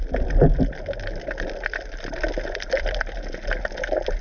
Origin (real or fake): real